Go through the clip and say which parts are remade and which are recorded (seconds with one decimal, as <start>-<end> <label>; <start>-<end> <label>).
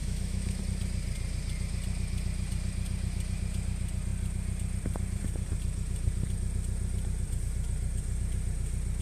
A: 0.0-0.6 remade; 0.6-9.0 recorded